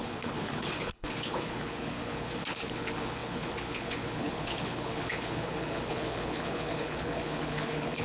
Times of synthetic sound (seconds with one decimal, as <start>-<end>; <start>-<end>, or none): 0.0-8.0